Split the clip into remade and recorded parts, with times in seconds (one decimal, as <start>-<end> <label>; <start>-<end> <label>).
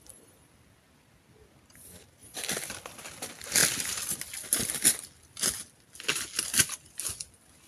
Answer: 0.0-7.7 recorded